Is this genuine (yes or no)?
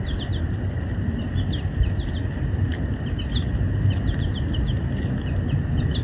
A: yes